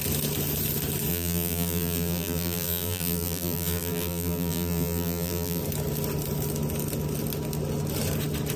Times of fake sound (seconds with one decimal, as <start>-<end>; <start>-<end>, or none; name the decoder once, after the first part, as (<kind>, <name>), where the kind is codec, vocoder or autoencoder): 1.1-5.6 (vocoder, BigVGAN v2)